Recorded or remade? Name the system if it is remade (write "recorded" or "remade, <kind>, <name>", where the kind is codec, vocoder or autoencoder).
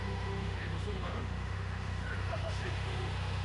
remade, autoencoder, DAC-VAE